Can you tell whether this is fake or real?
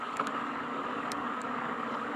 fake